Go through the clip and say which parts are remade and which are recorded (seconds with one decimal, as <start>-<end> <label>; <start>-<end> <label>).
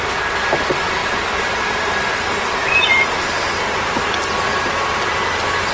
0.0-1.0 recorded; 1.0-4.4 remade; 4.4-5.7 recorded